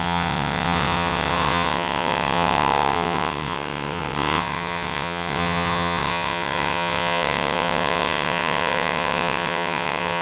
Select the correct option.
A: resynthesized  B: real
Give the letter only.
A